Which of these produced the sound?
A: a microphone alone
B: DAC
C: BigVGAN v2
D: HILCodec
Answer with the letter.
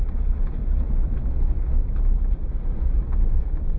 A